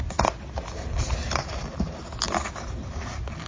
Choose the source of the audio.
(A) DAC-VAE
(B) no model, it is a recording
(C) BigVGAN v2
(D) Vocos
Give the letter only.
B